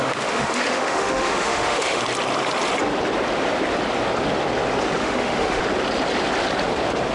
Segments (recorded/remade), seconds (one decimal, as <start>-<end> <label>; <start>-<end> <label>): 0.0-2.0 remade; 2.0-5.0 recorded; 5.0-5.6 remade; 5.6-7.1 recorded